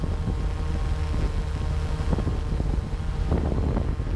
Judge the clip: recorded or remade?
recorded